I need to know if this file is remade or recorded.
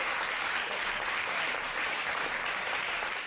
recorded